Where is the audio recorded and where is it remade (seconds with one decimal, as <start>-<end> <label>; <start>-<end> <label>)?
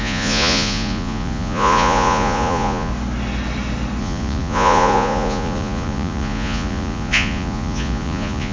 0.0-2.9 remade; 2.9-4.0 recorded; 4.0-8.5 remade